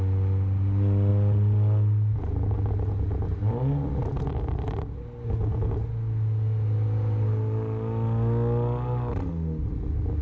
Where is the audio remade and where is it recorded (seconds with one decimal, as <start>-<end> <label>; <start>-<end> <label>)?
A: 0.0-10.2 recorded